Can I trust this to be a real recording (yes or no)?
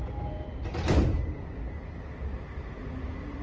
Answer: yes